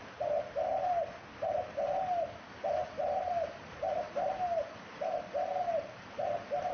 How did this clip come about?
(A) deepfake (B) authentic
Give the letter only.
B